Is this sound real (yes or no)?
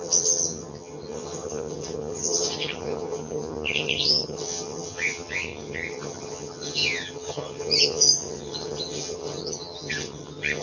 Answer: no